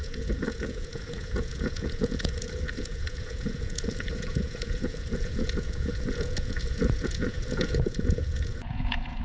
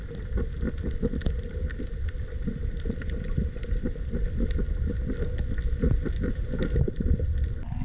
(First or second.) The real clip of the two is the second